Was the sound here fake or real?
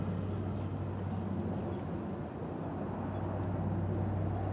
real